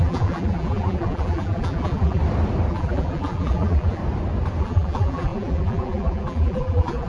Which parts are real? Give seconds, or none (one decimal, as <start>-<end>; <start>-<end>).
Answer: 2.2-2.7; 4.0-4.6